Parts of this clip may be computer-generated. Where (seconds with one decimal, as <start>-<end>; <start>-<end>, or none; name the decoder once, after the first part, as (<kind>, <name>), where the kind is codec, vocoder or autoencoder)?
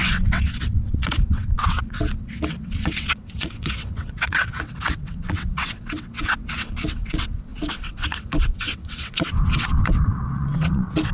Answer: 0.0-11.1 (vocoder, WaveNeXt)